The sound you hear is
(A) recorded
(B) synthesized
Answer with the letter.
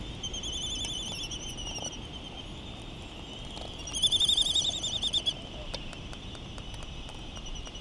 A